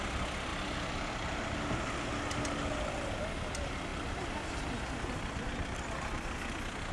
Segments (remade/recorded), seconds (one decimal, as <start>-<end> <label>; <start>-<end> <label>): 0.0-6.9 recorded